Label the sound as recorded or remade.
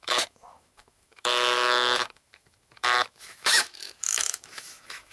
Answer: remade